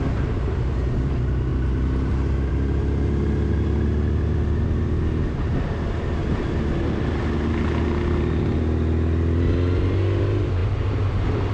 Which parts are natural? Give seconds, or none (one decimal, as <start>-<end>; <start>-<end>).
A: 0.0-11.5